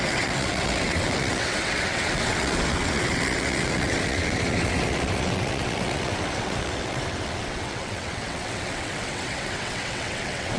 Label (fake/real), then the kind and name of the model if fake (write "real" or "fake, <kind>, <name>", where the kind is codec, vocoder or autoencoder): fake, vocoder, WaveNeXt